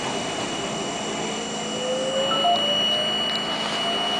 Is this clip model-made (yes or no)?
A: no